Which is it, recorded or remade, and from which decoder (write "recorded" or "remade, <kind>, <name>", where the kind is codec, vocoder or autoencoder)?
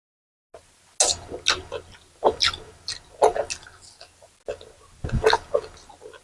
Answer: recorded